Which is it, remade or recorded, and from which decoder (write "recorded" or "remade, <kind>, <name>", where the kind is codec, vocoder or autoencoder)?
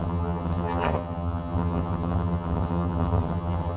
remade, vocoder, HiFi-GAN